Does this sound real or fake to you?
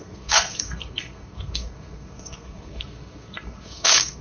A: fake